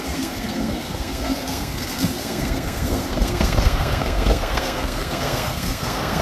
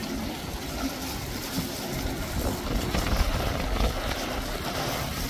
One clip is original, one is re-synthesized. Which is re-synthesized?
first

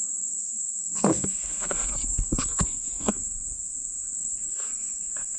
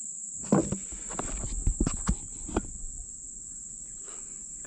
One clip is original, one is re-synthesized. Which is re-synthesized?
first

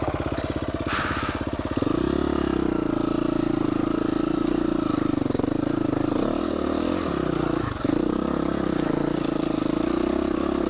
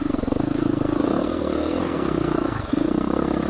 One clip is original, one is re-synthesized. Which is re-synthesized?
second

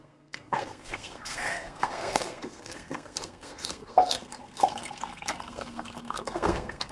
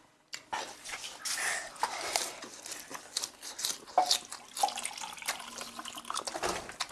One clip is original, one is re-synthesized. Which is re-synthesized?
first